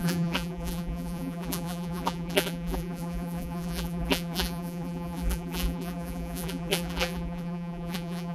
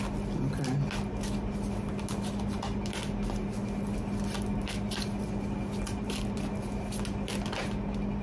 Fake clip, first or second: first